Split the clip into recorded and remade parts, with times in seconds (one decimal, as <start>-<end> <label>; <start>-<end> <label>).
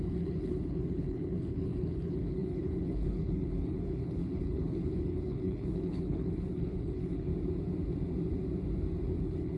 0.0-7.3 remade; 7.3-9.2 recorded; 9.2-9.6 remade